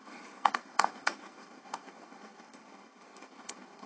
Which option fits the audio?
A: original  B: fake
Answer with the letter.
B